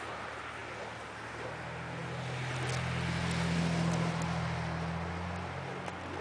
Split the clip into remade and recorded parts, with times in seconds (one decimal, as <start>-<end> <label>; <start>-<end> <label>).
0.0-6.2 recorded